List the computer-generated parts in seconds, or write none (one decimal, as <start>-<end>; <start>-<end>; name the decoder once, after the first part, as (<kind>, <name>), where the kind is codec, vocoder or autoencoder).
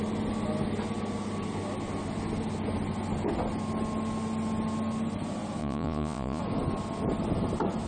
5.6-6.4 (vocoder, Vocos)